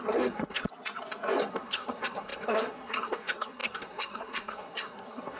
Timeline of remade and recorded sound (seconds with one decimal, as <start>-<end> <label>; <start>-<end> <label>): 0.0-0.6 remade; 0.6-1.4 recorded; 1.4-5.4 remade